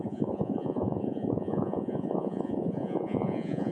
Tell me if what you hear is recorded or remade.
remade